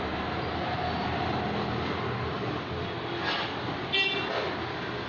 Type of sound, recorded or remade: recorded